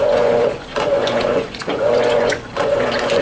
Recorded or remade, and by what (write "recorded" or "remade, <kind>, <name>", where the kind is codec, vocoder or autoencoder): remade, vocoder, Vocos